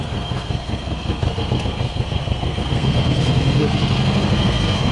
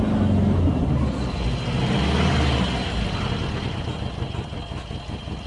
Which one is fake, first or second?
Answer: first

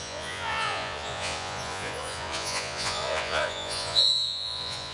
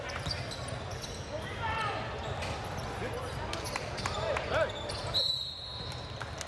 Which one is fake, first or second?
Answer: first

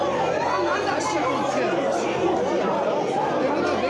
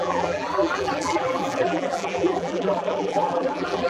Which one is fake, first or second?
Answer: second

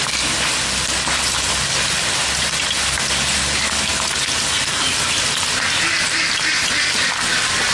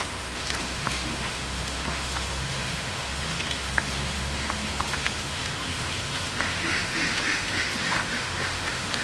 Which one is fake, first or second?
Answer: second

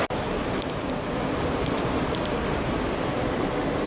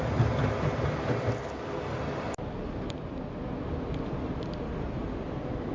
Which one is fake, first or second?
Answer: first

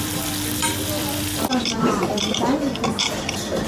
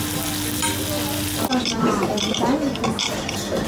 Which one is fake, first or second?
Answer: first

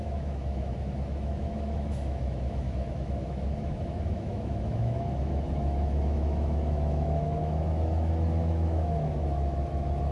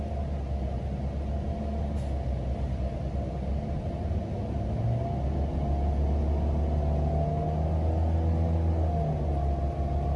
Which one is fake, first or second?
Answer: first